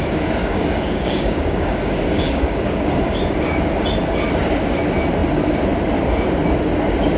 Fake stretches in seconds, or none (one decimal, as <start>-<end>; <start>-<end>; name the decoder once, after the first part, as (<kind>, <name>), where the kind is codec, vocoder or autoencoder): 0.4-3.2 (codec, DAC)